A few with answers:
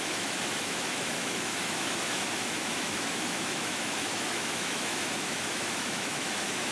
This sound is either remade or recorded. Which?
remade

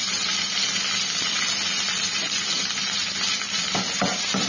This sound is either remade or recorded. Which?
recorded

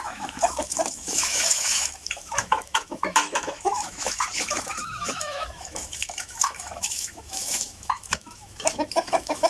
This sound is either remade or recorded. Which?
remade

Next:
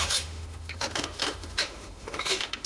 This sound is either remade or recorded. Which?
remade